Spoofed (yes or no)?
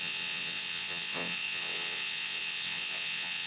yes